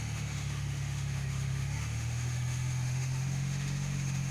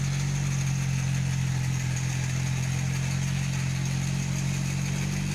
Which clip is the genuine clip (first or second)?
second